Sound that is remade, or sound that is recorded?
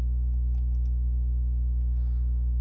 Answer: remade